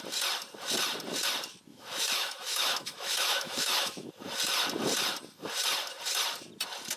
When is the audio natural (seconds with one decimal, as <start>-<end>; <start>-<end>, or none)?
0.0-1.7; 4.1-7.0